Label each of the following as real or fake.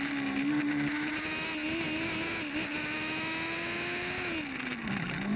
real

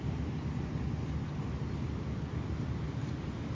real